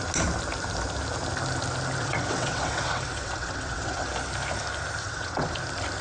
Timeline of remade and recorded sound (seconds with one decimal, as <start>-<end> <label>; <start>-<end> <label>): 0.0-2.0 recorded; 2.0-4.1 remade; 4.1-5.0 recorded; 5.0-5.5 remade; 5.5-6.0 recorded